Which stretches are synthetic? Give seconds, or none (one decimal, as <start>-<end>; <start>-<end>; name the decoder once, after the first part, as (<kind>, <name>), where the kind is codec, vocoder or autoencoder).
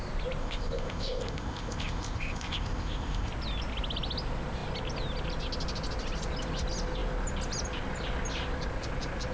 0.4-3.3 (codec, ZipCodec)